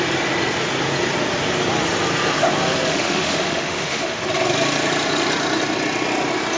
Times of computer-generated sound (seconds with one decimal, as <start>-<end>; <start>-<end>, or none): 2.9-4.2